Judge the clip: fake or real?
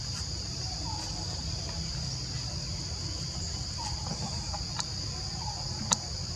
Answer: real